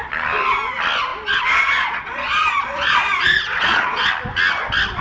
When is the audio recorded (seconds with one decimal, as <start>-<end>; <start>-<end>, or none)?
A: 0.0-1.1; 4.1-5.0